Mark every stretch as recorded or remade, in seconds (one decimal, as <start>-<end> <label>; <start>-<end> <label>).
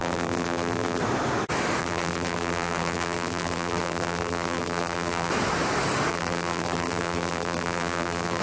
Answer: 0.0-1.0 remade; 1.0-1.8 recorded; 1.8-5.3 remade; 5.3-6.1 recorded; 6.1-8.4 remade